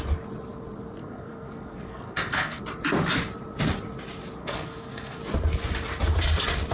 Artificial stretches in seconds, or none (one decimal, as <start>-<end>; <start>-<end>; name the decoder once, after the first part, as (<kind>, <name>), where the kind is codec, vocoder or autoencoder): 1.0-2.6 (codec, SNAC); 4.4-5.2

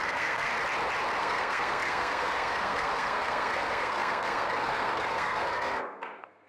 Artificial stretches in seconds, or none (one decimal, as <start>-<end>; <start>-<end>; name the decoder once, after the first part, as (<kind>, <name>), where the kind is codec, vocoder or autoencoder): 0.0-0.5 (codec, SNAC); 1.2-6.5

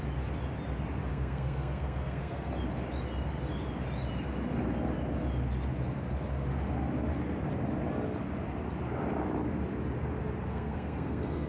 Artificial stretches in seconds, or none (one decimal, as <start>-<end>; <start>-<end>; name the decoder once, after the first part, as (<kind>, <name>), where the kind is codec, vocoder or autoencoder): 1.1-2.5 (codec, SNAC); 10.5-11.5

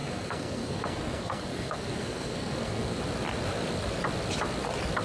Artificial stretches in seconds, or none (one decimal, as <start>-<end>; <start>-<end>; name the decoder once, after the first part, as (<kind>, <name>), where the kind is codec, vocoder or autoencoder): 0.0-3.0 (codec, SNAC)

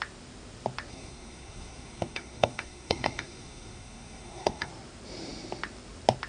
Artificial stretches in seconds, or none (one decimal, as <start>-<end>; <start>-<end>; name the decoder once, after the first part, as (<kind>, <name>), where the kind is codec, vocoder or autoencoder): 0.9-4.7 (codec, SNAC)

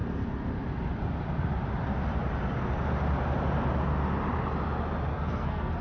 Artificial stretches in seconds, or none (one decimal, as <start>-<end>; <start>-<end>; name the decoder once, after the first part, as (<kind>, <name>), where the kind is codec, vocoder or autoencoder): 5.1-5.8 (codec, SNAC)

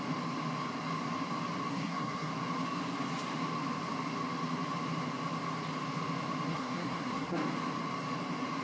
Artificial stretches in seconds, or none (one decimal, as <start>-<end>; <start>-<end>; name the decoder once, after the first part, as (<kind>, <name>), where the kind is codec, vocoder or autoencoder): 1.7-2.3 (codec, SNAC); 6.5-7.4

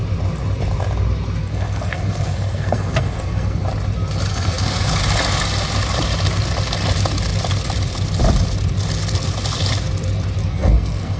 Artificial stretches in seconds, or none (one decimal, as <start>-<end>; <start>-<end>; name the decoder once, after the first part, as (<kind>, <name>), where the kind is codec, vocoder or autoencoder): 1.4-3.6 (codec, SNAC); 4.3-5.0; 10.5-11.2